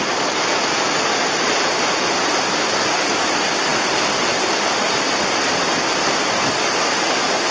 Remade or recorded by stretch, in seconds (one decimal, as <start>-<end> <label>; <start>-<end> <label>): 0.0-7.5 recorded

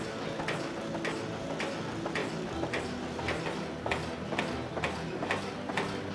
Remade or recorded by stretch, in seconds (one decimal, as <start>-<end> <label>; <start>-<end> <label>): 0.0-6.1 recorded

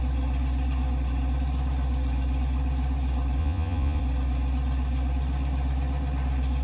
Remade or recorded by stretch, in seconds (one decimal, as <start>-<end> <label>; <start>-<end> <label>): 0.0-3.4 recorded; 3.4-4.0 remade; 4.0-6.6 recorded

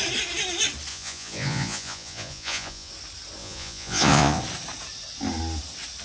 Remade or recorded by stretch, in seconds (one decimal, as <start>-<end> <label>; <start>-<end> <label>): 0.0-0.9 recorded; 0.9-2.9 remade; 2.9-3.4 recorded; 3.4-4.4 remade; 4.4-6.0 recorded

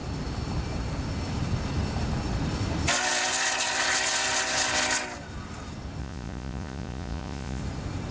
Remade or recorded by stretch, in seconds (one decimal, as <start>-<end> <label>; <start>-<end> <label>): 0.0-6.0 recorded; 6.0-7.6 remade; 7.6-8.1 recorded

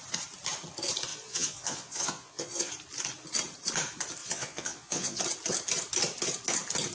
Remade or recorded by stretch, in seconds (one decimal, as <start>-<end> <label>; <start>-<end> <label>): 0.0-1.1 recorded; 1.1-2.7 remade; 2.7-4.2 recorded; 4.2-5.2 remade; 5.2-6.9 recorded

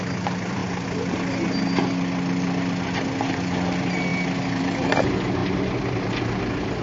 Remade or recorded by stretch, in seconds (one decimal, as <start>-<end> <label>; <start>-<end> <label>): 0.0-6.8 recorded

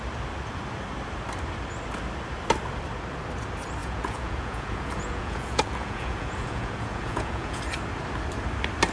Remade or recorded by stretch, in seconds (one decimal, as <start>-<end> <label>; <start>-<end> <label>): 0.0-3.8 recorded; 3.8-7.6 remade; 7.6-8.9 recorded